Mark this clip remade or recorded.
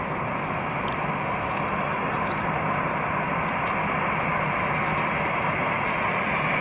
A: recorded